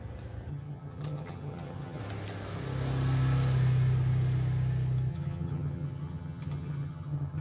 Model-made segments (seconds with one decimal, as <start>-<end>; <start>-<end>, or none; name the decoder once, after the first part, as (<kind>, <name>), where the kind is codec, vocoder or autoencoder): 0.5-2.0 (vocoder, HiFi-GAN); 5.1-7.4